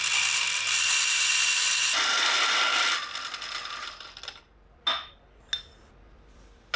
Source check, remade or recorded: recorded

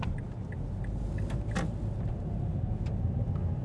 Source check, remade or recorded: recorded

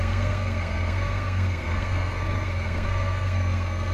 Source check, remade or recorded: remade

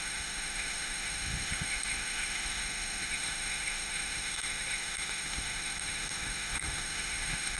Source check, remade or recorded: remade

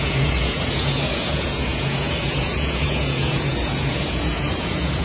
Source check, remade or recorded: remade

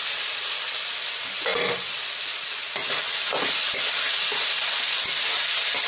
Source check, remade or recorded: recorded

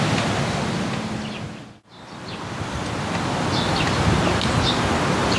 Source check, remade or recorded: recorded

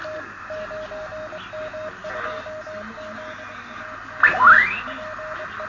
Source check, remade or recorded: recorded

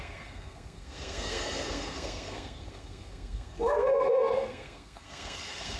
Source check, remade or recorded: remade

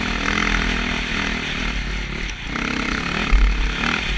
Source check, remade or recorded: recorded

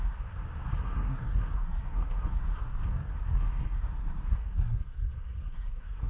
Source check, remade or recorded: remade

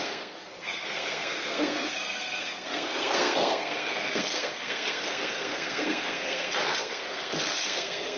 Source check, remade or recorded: remade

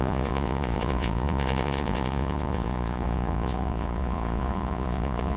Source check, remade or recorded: remade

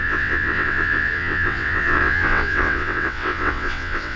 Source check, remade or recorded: remade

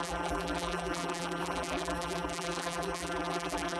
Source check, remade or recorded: remade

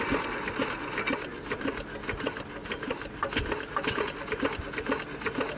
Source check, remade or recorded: recorded